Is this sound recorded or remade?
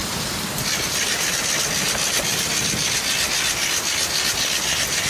recorded